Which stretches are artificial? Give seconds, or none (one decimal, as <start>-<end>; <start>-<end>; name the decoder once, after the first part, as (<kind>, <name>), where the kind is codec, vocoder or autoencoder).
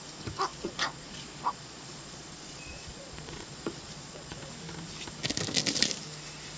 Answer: 0.5-4.5 (vocoder, Vocos)